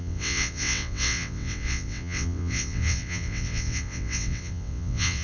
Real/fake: fake